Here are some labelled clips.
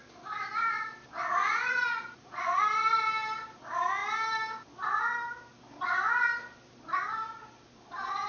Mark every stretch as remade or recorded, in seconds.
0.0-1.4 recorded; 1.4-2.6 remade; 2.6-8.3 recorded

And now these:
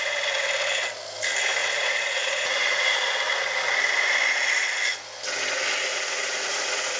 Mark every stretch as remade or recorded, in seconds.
0.0-1.6 recorded; 1.6-3.1 remade; 3.1-5.9 recorded; 5.9-7.0 remade

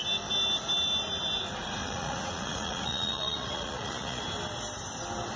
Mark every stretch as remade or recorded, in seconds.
0.0-1.8 recorded; 1.8-4.2 remade; 4.2-5.4 recorded

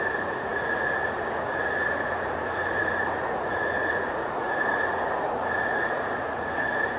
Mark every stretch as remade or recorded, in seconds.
0.0-7.0 remade

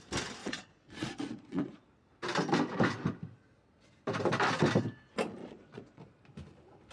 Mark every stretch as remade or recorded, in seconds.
0.0-0.4 recorded; 0.4-1.8 remade; 1.8-5.4 recorded; 5.4-6.0 remade; 6.0-6.9 recorded

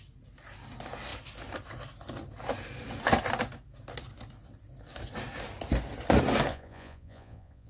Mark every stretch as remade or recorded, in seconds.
0.0-6.5 recorded; 6.5-7.7 remade